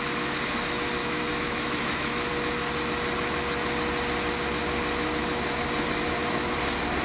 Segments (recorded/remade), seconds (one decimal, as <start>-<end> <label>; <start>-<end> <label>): 0.0-1.0 recorded; 1.0-2.3 remade; 2.3-7.0 recorded